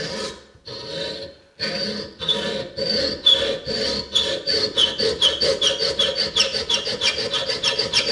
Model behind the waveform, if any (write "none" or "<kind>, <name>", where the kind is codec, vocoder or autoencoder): none